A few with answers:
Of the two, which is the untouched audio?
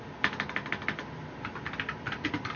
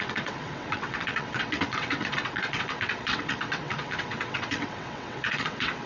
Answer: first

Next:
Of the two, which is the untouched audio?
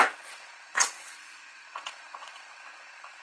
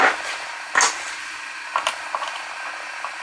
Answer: second